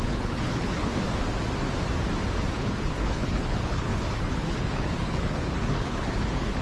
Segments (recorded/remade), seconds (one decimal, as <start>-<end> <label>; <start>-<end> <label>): 0.0-0.9 remade; 0.9-2.5 recorded; 2.5-6.6 remade